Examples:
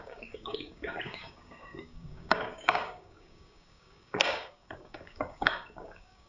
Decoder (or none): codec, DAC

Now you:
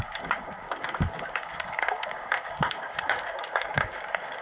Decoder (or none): codec, DAC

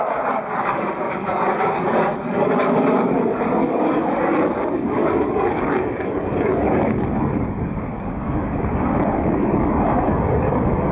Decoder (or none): codec, DAC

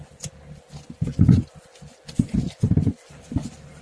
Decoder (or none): none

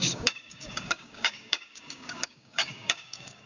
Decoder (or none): codec, DAC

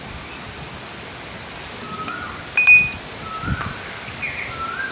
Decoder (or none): none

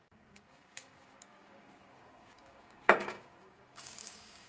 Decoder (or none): codec, DAC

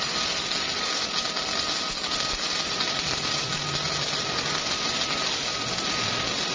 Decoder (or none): none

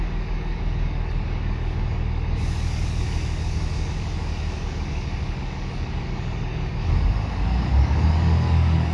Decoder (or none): codec, DAC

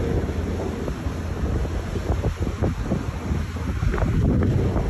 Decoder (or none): none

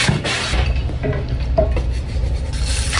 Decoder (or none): none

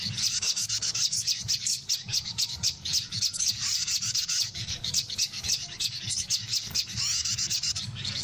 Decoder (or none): codec, DAC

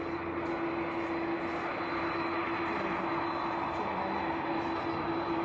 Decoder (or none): none